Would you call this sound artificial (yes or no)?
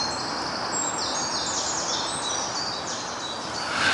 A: no